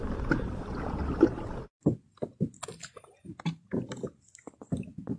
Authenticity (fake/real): real